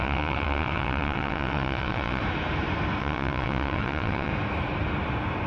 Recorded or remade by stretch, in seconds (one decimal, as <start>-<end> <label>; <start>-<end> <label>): 0.0-2.2 remade; 2.2-3.0 recorded; 3.0-4.3 remade; 4.3-5.5 recorded

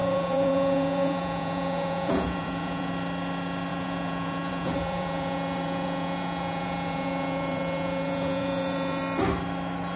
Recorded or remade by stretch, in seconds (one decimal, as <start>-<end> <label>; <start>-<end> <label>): 0.0-2.9 remade; 2.9-3.7 recorded; 3.7-9.0 remade; 9.0-10.0 recorded

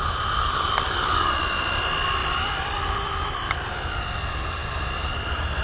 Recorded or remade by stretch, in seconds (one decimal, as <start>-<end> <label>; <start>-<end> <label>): 0.0-5.6 recorded

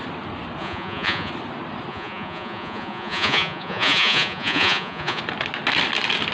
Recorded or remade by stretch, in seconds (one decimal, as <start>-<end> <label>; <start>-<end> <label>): 0.0-0.6 recorded; 0.6-1.3 remade; 1.3-1.9 recorded; 1.9-5.2 remade; 5.2-6.3 recorded